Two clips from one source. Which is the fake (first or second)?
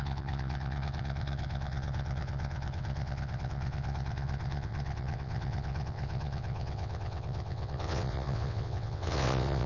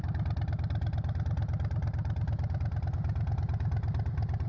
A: first